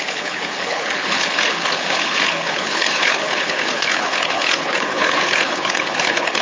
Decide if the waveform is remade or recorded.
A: remade